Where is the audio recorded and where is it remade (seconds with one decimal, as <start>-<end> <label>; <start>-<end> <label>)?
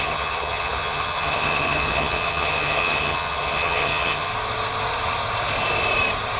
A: 0.0-4.3 remade; 4.3-6.4 recorded